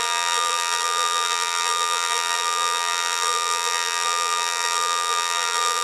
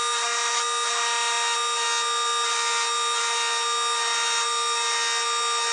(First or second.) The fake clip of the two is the first